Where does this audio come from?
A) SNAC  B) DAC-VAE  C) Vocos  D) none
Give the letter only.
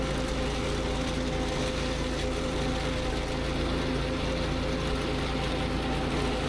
D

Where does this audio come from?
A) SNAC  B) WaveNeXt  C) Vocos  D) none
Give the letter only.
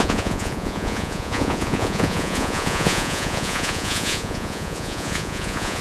C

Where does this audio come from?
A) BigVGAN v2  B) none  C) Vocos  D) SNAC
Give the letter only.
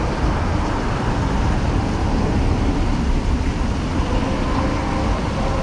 B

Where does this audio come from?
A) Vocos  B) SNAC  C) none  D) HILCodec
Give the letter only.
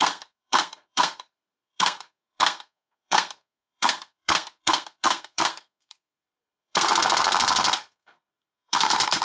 B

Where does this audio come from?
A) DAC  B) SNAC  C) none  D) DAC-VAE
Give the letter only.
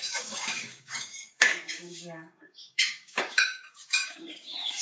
A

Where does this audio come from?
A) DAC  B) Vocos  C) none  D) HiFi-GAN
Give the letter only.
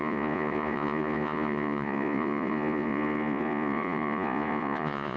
B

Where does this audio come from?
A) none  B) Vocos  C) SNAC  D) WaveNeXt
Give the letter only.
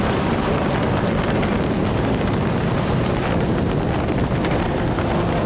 A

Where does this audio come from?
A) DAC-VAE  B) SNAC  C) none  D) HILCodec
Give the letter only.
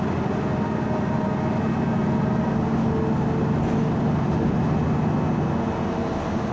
C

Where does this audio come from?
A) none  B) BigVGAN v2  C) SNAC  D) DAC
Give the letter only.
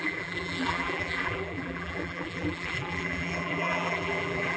B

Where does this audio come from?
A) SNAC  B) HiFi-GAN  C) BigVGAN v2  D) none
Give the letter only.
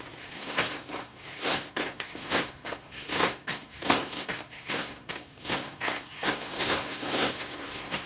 A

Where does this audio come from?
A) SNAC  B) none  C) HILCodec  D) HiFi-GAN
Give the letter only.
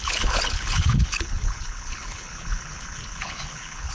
C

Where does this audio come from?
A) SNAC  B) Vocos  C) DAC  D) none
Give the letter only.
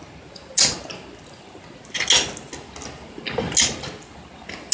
D